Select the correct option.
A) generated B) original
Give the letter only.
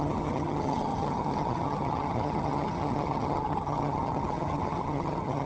A